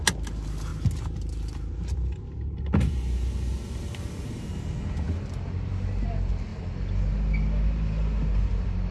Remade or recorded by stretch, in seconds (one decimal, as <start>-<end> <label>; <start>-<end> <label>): 0.0-8.9 recorded